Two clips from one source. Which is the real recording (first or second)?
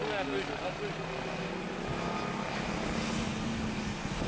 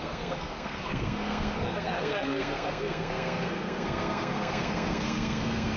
first